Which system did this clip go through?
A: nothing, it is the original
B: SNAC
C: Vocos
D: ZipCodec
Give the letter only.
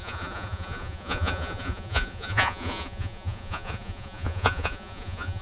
C